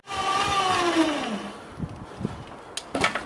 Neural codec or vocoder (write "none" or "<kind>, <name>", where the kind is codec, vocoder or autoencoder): none